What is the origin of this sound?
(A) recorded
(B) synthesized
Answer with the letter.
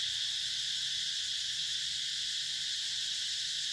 B